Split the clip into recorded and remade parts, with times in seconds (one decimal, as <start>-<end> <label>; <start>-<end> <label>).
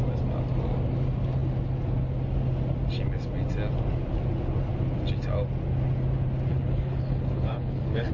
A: 0.0-6.5 recorded; 6.5-8.1 remade